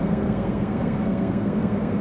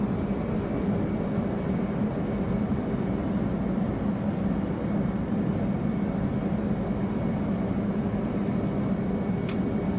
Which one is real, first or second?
second